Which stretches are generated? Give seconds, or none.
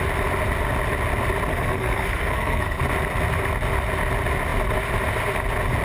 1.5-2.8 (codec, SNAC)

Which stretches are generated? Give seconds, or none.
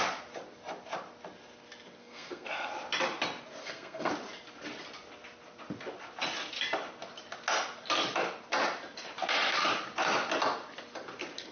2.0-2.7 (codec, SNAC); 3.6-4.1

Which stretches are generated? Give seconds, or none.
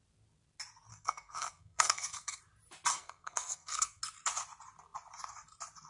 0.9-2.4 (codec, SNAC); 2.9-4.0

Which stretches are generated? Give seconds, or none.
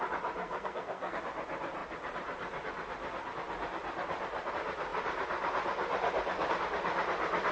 0.4-1.2 (codec, SNAC)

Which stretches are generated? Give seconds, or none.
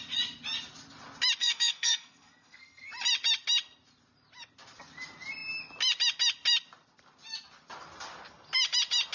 1.4-2.9 (codec, SNAC)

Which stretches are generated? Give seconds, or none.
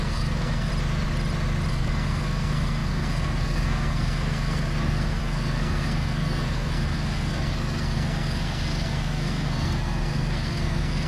0.0-0.7 (codec, SNAC); 1.7-11.1